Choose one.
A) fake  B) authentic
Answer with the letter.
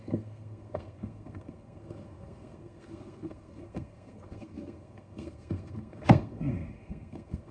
A